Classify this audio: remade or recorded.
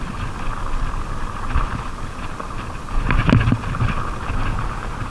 recorded